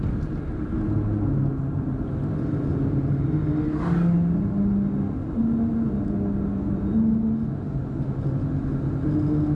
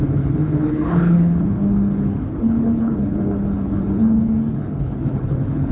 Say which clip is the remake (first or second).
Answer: second